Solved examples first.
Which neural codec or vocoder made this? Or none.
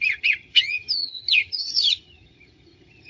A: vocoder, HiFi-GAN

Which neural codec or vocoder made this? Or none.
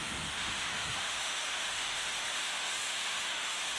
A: autoencoder, DAC-VAE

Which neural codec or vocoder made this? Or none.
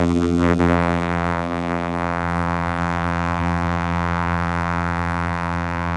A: vocoder, BigVGAN v2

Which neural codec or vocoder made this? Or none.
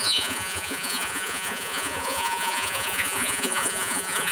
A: vocoder, Vocos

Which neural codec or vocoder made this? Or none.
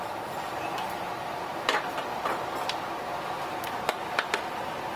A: none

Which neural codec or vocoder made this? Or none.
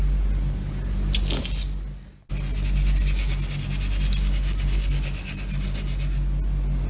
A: none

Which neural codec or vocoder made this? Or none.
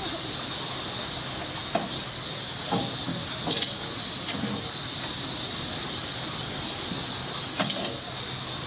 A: none